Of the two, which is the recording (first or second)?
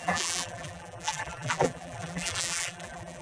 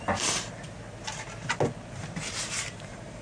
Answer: second